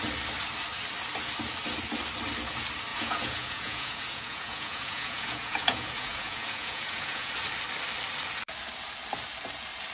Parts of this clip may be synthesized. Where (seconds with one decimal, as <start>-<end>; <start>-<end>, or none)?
2.9-7.3